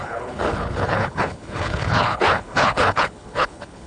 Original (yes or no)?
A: no